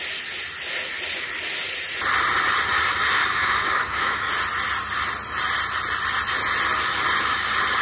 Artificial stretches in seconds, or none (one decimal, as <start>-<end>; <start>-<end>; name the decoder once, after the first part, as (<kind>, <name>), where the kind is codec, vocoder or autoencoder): 3.2-4.3 (codec, DAC)